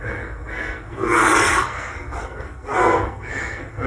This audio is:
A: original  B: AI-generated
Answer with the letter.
B